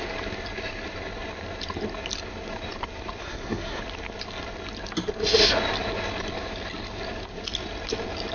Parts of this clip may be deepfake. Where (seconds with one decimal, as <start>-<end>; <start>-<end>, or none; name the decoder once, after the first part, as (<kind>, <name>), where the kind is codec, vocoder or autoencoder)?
3.2-3.8 (codec, SNAC)